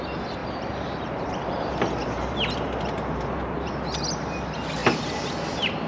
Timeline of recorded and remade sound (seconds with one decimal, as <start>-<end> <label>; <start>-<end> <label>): 0.0-0.4 recorded; 0.4-3.7 remade; 3.7-5.9 recorded